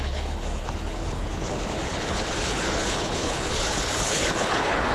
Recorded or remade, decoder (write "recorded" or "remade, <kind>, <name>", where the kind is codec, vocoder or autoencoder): remade, codec, HILCodec